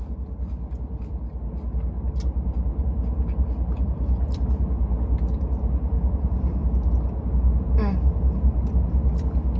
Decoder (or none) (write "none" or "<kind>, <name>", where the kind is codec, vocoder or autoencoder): none